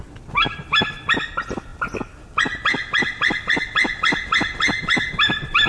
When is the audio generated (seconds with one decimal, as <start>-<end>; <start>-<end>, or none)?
0.0-1.7; 3.4-5.7